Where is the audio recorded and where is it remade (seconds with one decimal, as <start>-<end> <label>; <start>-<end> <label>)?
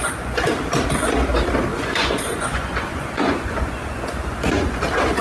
0.0-0.5 remade; 0.5-1.7 recorded; 1.7-4.8 remade; 4.8-5.2 recorded